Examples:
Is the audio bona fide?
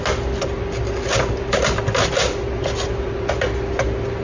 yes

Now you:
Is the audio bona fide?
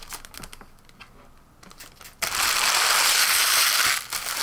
yes